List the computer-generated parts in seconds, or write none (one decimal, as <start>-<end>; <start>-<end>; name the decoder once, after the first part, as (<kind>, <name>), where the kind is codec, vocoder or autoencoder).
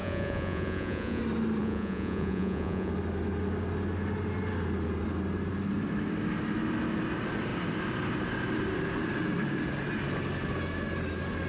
0.0-1.2 (vocoder, Vocos); 1.6-2.9